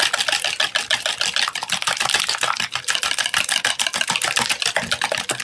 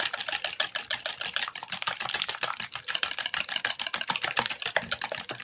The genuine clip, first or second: first